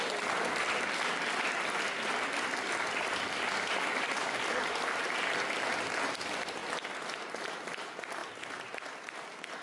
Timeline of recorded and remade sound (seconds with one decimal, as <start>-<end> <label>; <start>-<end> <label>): 0.0-9.6 recorded